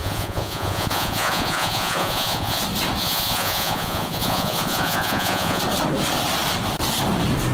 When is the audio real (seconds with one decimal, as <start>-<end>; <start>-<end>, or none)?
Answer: 2.6-3.0; 5.6-7.5